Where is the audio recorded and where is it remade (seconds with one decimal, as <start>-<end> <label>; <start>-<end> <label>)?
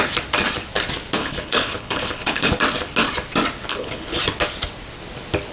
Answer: 0.0-1.2 recorded; 1.2-2.5 remade; 2.5-3.7 recorded; 3.7-4.2 remade; 4.2-5.5 recorded